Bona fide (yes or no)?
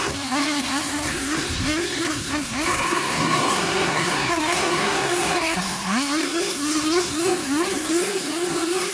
no